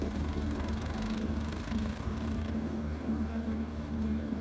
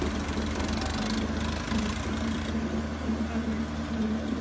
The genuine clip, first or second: second